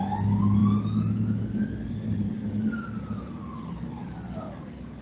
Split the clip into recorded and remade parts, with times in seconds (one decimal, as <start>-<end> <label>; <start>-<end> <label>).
0.0-5.0 recorded